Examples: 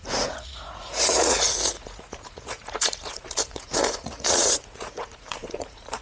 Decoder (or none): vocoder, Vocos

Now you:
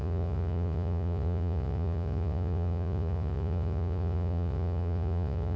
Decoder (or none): vocoder, Vocos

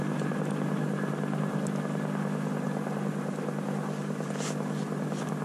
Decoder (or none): none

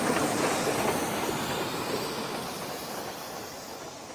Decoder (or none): none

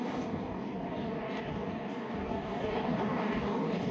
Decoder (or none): codec, DAC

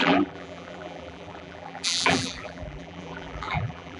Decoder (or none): vocoder, BigVGAN v2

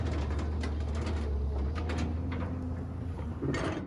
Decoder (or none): none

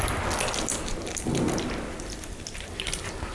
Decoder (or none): none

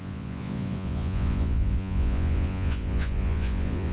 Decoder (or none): vocoder, Vocos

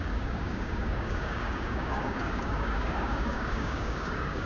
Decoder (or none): codec, DAC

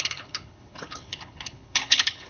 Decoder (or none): codec, HILCodec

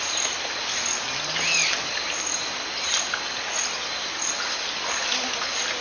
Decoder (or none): none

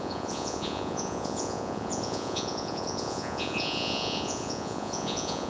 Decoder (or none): vocoder, Vocos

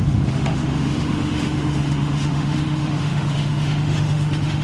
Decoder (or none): autoencoder, DAC-VAE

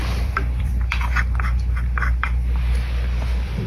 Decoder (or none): vocoder, BigVGAN v2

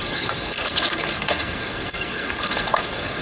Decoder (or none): codec, SNAC